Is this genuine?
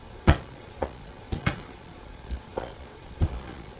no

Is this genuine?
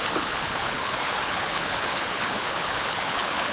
no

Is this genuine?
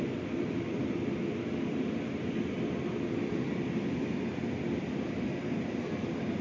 no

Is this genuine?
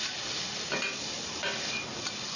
yes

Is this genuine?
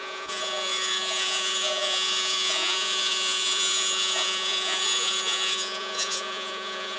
no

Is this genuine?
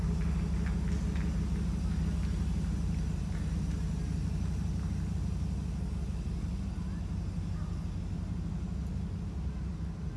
yes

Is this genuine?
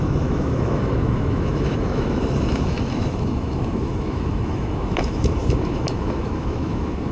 no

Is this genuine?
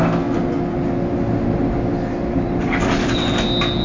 yes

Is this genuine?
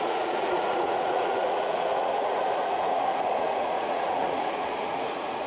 no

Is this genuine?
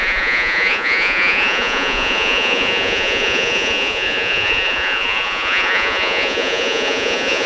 no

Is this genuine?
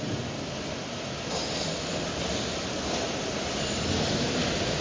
yes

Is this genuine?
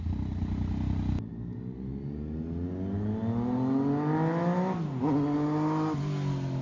yes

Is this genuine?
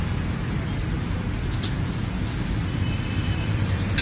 yes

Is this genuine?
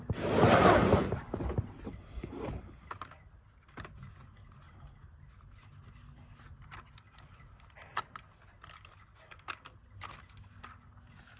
yes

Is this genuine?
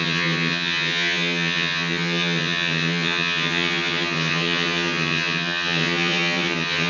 no